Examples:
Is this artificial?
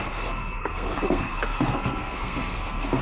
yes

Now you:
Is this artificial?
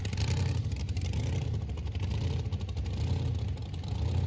no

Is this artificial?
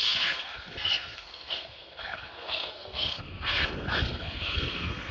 yes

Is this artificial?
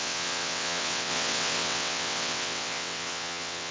yes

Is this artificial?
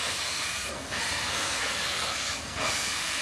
yes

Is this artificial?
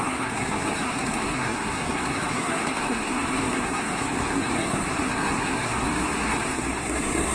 yes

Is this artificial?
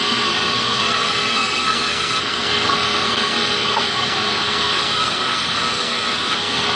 yes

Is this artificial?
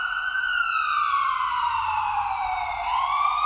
no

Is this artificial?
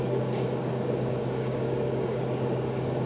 yes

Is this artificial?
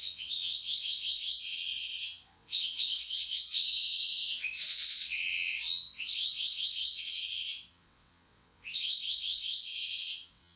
yes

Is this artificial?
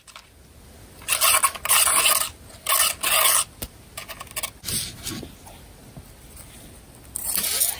no